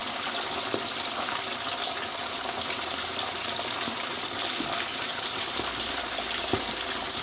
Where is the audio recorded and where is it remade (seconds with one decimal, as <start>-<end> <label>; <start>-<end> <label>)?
0.0-4.3 remade; 4.3-4.9 recorded; 4.9-6.7 remade; 6.7-7.2 recorded